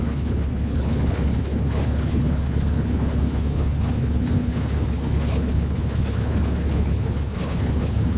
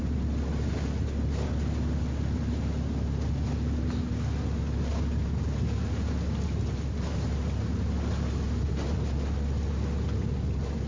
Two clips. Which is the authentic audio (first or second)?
second